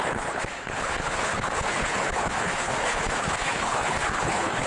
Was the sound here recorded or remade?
remade